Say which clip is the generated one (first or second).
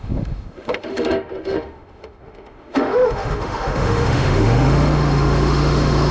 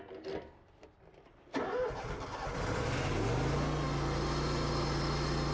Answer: first